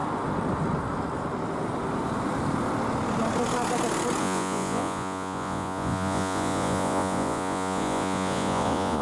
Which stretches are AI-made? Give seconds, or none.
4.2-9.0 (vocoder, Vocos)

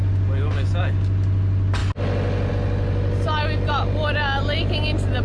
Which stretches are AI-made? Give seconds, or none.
none